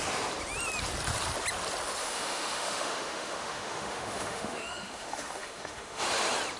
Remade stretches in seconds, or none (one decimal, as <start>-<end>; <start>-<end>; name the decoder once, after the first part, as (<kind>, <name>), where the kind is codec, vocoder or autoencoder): 2.0-6.0 (autoencoder, DAC-VAE)